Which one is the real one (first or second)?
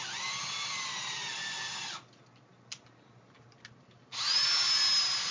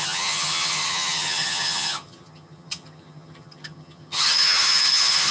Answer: first